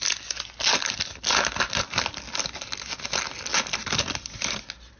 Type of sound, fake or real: real